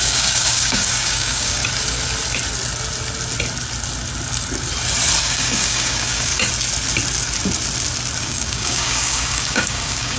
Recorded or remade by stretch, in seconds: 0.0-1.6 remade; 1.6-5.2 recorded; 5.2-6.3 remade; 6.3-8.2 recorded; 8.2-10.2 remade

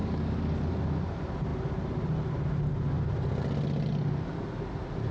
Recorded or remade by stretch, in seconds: 0.0-0.7 remade; 0.7-5.1 recorded

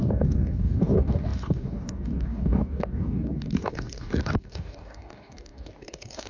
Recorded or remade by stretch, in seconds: 0.0-6.3 remade

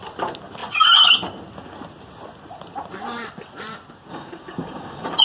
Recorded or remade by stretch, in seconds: 0.0-4.1 recorded; 4.1-5.2 remade

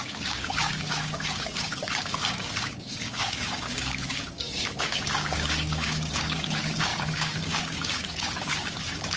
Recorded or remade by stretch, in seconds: 0.0-9.2 remade

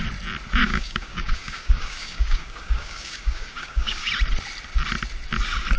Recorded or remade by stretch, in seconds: 0.0-0.6 recorded; 0.6-4.1 remade; 4.1-5.8 recorded

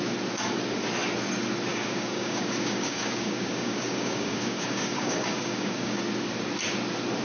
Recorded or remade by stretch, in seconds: 0.0-1.7 recorded; 1.7-6.0 remade; 6.0-7.2 recorded